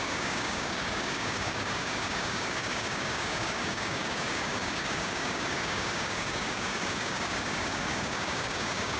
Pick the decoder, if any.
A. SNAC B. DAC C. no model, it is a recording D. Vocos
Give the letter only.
B